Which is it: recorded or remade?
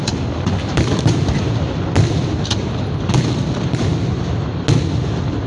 recorded